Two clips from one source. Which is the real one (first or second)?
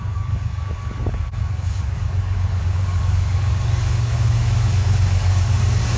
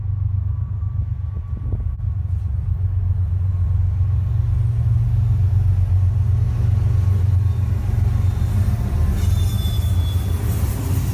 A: second